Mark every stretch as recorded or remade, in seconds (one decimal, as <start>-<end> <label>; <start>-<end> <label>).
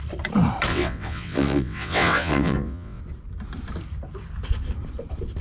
0.0-0.7 recorded; 0.7-3.0 remade; 3.0-5.4 recorded